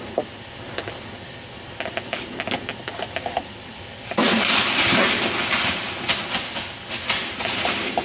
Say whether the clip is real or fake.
real